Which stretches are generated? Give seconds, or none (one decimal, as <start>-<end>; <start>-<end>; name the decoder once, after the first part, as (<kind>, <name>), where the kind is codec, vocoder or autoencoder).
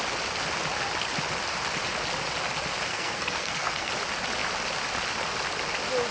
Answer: 2.9-3.9 (codec, SNAC)